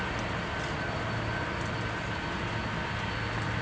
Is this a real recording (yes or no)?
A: yes